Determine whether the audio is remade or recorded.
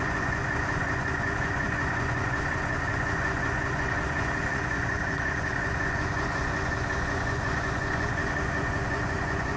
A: remade